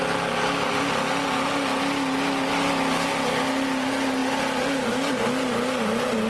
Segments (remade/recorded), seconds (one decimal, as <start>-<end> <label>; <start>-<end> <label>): 0.0-6.3 recorded

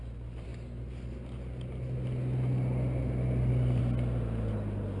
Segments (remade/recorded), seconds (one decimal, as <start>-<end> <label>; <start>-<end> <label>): 0.0-5.0 recorded

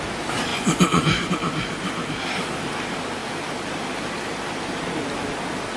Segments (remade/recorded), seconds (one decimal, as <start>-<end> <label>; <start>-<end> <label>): 0.0-0.5 recorded; 0.5-1.3 remade; 1.3-5.8 recorded

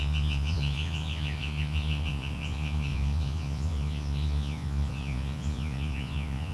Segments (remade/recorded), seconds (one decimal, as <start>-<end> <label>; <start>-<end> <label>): 0.0-6.5 remade

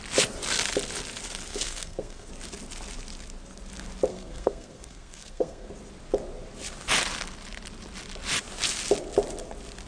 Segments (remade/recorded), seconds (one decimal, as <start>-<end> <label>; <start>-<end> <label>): 0.0-1.5 recorded; 1.5-2.3 remade; 2.3-4.1 recorded; 4.1-5.7 remade; 5.7-9.9 recorded

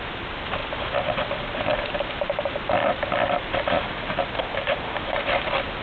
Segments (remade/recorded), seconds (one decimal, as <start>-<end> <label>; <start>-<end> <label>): 0.0-5.8 recorded